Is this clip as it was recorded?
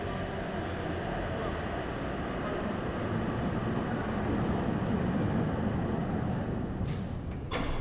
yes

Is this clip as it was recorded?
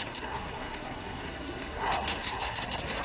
no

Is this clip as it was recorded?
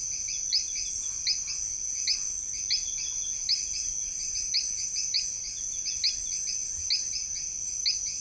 yes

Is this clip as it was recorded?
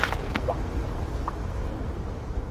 no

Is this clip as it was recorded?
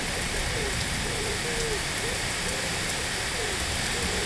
yes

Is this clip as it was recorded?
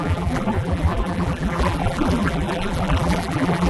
no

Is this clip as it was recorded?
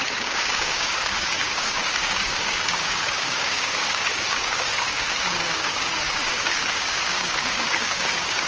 no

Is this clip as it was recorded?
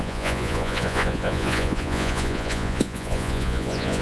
no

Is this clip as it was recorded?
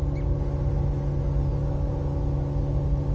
yes